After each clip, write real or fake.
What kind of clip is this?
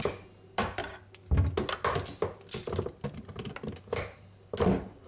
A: real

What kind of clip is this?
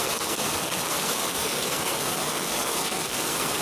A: fake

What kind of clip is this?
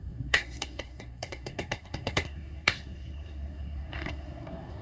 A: fake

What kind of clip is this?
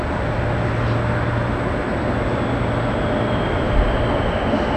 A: real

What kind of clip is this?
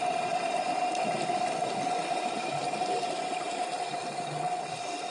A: real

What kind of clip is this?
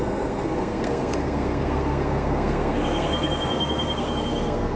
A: fake